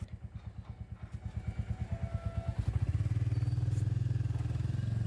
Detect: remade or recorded recorded